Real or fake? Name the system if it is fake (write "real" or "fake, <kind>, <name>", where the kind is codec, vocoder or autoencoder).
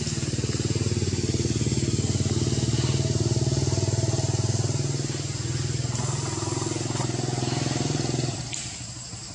real